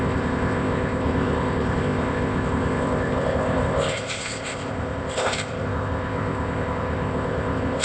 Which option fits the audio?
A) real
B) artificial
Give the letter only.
B